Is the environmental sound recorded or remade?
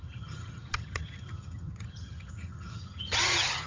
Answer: remade